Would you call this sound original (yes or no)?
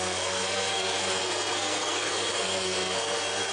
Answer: no